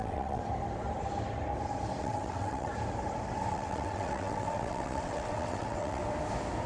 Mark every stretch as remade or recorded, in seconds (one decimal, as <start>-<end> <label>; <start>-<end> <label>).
0.0-0.4 remade; 0.4-2.0 recorded; 2.0-2.7 remade; 2.7-3.5 recorded; 3.5-6.0 remade; 6.0-6.7 recorded